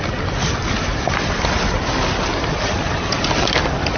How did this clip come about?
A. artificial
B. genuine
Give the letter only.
B